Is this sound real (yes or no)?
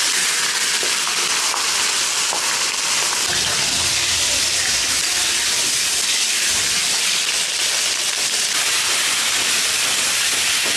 yes